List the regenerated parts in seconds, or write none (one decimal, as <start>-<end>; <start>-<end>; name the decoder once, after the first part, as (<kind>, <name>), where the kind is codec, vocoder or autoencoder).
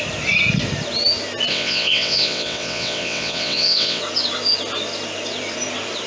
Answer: 1.5-4.0 (vocoder, WaveNeXt)